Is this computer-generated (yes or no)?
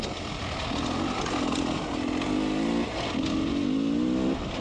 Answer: no